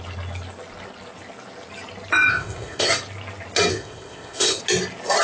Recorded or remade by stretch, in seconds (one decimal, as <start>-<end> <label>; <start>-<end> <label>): 0.0-2.3 recorded; 2.3-2.9 remade; 2.9-3.7 recorded; 3.7-4.6 remade; 4.6-5.2 recorded